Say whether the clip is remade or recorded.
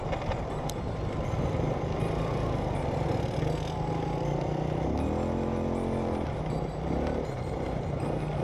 recorded